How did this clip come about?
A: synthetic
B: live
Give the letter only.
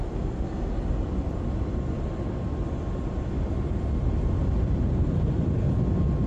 B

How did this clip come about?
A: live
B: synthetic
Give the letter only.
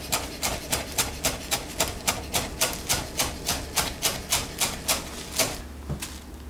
A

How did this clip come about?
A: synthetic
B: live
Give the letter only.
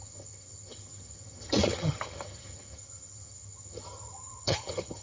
A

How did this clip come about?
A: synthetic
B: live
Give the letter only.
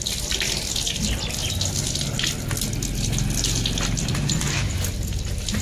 B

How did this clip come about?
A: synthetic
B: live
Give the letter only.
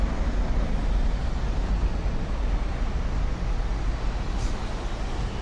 B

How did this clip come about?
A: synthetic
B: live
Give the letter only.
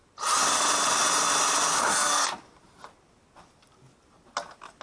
B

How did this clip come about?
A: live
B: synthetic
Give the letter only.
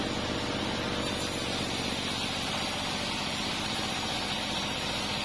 B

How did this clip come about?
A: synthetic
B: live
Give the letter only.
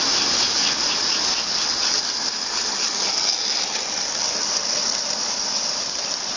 B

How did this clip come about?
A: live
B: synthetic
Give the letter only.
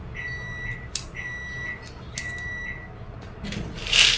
A